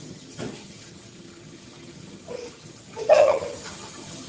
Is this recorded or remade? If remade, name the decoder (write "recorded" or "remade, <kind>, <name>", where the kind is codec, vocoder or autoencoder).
remade, vocoder, HiFi-GAN